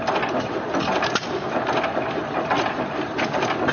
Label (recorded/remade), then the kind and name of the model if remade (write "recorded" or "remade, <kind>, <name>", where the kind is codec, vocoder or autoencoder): recorded